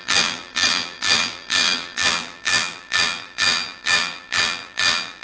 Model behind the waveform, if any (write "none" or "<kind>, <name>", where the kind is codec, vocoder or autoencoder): vocoder, BigVGAN v2